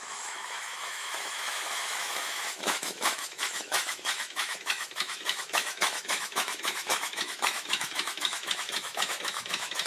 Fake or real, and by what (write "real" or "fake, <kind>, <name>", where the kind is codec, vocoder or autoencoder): fake, autoencoder, DAC-VAE